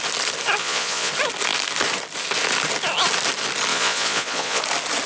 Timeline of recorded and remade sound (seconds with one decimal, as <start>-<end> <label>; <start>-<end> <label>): 0.0-0.6 recorded; 0.6-1.1 remade; 1.1-3.7 recorded; 3.7-4.6 remade; 4.6-5.1 recorded